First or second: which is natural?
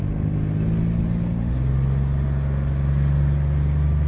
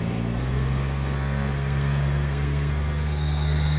first